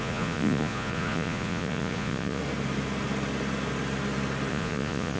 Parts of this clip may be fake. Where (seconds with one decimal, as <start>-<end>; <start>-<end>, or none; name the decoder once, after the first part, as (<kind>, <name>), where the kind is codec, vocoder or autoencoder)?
0.0-2.4 (vocoder, Vocos); 4.5-5.2